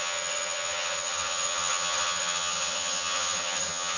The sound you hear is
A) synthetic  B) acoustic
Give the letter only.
A